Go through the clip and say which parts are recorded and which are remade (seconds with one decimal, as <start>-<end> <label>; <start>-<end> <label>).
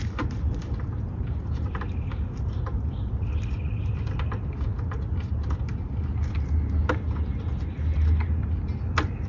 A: 0.0-9.3 recorded